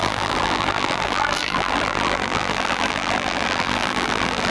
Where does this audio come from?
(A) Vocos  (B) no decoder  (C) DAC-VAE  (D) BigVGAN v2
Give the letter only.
D